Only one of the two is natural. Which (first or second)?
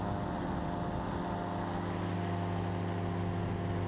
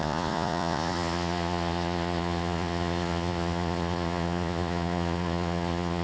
first